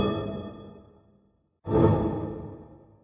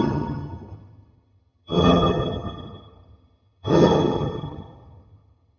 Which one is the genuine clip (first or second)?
first